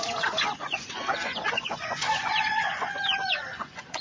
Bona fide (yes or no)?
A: no